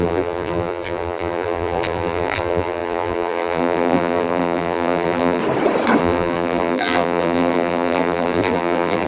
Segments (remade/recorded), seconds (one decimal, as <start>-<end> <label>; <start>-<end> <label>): 0.0-5.4 remade; 5.4-6.0 recorded; 6.0-9.1 remade